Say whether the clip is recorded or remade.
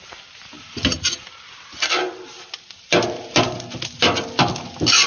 recorded